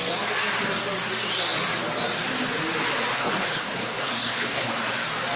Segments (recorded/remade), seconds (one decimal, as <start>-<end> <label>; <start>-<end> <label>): 0.0-3.1 recorded; 3.1-4.8 remade; 4.8-5.4 recorded